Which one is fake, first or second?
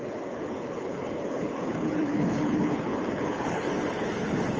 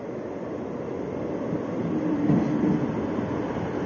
first